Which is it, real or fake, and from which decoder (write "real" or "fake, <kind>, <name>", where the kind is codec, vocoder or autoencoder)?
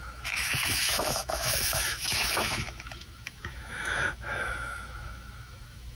fake, autoencoder, DAC-VAE